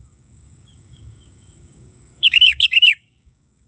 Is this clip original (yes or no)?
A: no